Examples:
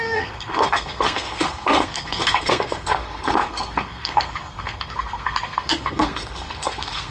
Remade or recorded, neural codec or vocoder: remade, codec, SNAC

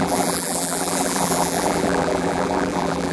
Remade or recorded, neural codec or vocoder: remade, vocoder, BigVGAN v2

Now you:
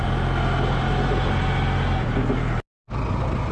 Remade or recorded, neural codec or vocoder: recorded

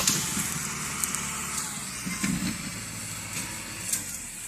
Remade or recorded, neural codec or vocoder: recorded